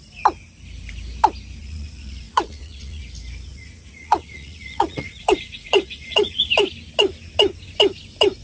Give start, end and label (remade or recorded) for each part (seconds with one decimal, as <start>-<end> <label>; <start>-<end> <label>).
0.0-1.6 recorded; 1.6-3.0 remade; 3.0-3.5 recorded; 3.5-6.4 remade; 6.4-8.4 recorded